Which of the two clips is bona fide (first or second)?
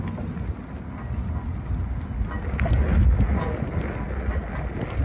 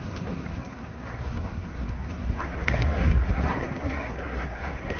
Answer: first